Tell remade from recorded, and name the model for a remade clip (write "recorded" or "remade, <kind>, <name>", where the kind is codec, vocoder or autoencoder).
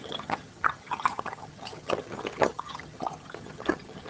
remade, vocoder, HiFi-GAN